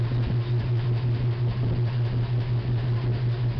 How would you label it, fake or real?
real